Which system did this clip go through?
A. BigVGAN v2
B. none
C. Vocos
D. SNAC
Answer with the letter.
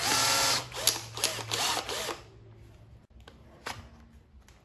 B